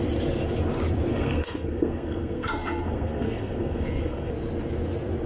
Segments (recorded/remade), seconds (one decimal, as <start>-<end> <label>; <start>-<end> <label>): 0.0-1.1 recorded; 1.1-4.3 remade; 4.3-5.3 recorded